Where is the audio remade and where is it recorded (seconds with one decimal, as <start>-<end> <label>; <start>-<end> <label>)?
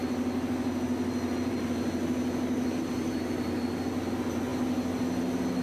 0.0-5.6 recorded